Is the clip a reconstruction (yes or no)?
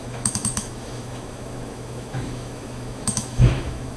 yes